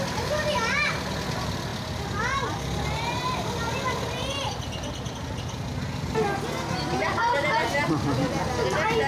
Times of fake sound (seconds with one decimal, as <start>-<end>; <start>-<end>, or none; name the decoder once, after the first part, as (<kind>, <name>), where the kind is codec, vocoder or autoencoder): none